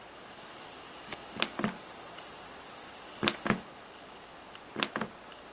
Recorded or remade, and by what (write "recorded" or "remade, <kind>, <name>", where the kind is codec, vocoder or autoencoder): recorded